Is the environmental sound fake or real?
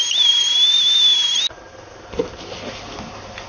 real